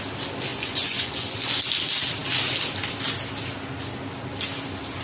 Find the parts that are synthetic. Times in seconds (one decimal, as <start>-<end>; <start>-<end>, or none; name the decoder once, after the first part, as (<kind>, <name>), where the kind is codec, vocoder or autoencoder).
0.5-1.7 (vocoder, Vocos)

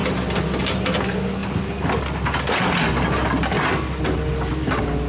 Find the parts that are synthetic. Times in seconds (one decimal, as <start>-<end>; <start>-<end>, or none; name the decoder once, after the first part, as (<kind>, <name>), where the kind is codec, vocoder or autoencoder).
none

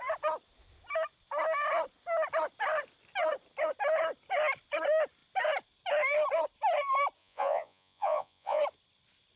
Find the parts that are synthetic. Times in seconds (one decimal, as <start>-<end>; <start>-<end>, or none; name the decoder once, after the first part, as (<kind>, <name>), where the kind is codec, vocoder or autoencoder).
7.2-8.6 (vocoder, Vocos)

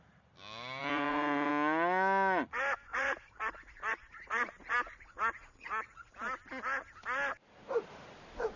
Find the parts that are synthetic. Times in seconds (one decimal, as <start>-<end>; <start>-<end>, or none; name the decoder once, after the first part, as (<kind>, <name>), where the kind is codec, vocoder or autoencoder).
0.8-1.5 (vocoder, Vocos); 2.9-6.1

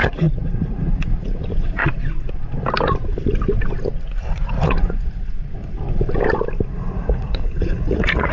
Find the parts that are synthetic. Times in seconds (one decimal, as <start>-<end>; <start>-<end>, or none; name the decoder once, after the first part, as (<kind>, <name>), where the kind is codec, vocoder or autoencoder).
0.0-1.8 (vocoder, Vocos); 4.2-5.3; 6.7-8.3

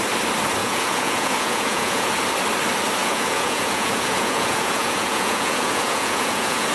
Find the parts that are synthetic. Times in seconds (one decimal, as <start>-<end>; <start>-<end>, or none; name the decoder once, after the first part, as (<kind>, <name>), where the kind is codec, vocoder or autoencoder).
0.6-2.1 (vocoder, Vocos); 3.0-6.7

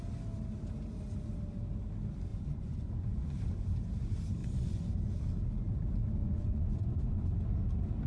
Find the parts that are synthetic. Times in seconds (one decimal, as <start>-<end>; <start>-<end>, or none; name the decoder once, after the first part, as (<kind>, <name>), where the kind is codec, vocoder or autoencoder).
2.3-3.4 (vocoder, Vocos); 4.4-5.0; 6.2-7.3

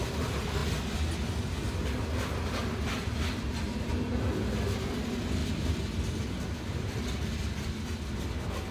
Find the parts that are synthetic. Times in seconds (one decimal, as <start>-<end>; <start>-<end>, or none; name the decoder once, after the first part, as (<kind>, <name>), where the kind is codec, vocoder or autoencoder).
none